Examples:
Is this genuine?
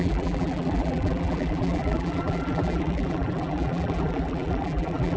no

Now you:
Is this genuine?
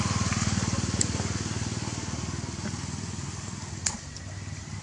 yes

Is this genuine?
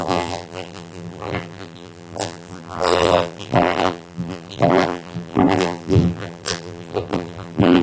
no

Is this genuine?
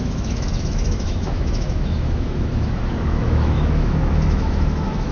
no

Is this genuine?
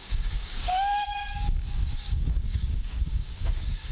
no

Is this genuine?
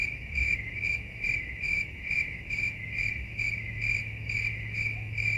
no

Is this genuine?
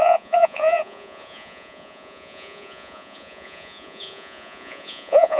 no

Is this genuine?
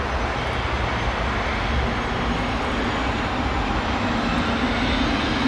yes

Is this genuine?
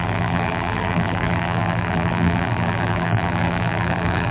no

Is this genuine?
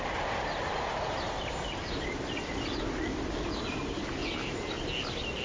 yes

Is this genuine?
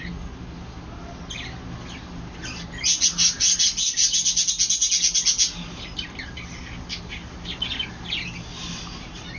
yes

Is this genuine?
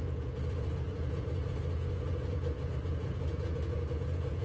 no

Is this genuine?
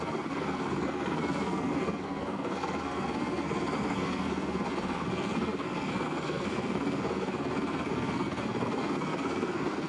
no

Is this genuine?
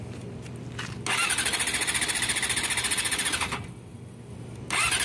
yes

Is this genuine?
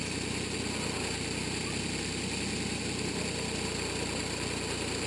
yes